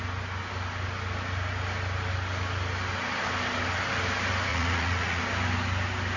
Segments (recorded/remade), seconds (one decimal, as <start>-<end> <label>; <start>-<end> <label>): 0.0-4.5 recorded; 4.5-5.2 remade; 5.2-6.2 recorded